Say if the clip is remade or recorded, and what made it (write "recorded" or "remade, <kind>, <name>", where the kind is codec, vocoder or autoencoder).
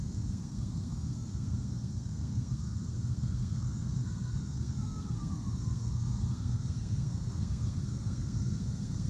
remade, codec, SNAC